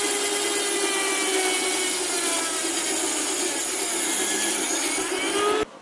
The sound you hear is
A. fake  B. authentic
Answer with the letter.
B